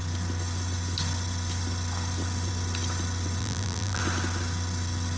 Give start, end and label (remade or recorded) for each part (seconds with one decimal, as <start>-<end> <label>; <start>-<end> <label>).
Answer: 0.0-3.4 recorded; 3.4-4.0 remade; 4.0-5.2 recorded